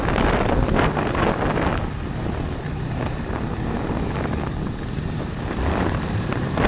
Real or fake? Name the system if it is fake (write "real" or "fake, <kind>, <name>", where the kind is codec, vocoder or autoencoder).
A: real